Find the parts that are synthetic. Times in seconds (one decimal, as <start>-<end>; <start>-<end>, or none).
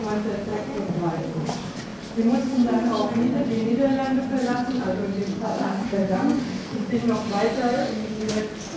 5.3-6.9; 7.8-8.4